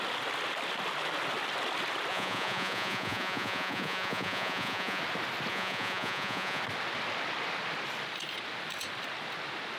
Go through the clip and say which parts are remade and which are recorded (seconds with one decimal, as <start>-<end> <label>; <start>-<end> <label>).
0.0-2.1 recorded; 2.1-5.0 remade; 5.0-5.5 recorded; 5.5-6.6 remade; 6.6-9.8 recorded